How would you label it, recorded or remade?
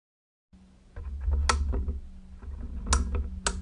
recorded